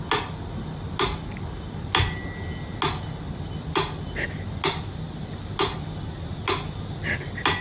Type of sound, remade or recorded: recorded